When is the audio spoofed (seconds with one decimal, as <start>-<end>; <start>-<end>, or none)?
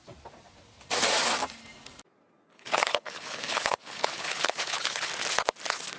2.5-5.1